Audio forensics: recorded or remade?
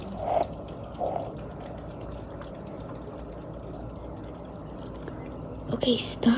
recorded